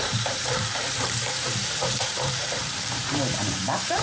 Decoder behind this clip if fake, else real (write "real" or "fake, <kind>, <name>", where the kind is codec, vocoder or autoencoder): fake, vocoder, BigVGAN v2